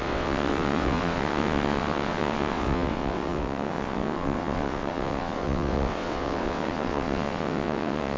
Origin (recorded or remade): remade